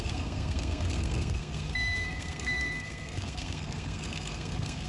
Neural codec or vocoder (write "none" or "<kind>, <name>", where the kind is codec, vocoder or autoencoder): codec, SNAC